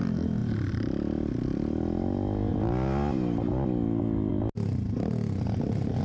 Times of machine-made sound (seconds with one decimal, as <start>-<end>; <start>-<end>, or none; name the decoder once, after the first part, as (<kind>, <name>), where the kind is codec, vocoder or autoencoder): 0.4-1.3 (vocoder, BigVGAN v2)